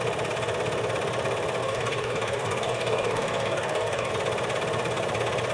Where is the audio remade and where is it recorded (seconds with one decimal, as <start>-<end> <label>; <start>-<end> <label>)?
0.0-1.6 recorded; 1.6-4.1 remade; 4.1-5.5 recorded

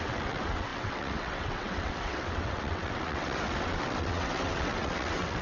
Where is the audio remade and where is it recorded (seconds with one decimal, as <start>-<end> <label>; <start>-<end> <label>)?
0.0-5.4 remade

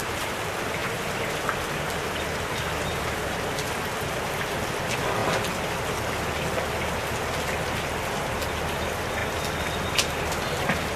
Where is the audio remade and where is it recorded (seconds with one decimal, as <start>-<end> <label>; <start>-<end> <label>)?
0.0-11.0 recorded

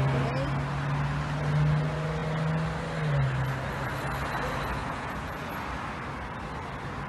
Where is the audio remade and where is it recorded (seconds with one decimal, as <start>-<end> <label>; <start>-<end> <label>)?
0.0-4.8 recorded; 4.8-5.5 remade; 5.5-7.1 recorded

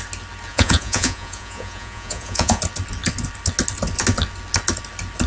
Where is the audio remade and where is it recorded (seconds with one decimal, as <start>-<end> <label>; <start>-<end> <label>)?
0.0-0.5 recorded; 0.5-2.6 remade; 2.6-5.3 recorded

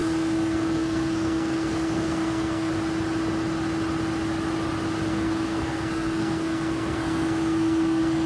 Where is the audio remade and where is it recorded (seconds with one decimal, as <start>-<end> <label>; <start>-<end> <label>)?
0.0-2.7 remade; 2.7-5.1 recorded; 5.1-8.3 remade